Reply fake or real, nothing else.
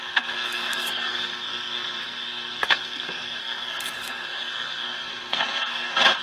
fake